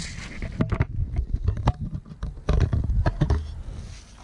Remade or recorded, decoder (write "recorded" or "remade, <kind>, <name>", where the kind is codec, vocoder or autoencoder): recorded